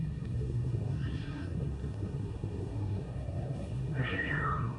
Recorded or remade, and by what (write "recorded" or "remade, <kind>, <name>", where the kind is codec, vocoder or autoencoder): remade, codec, SNAC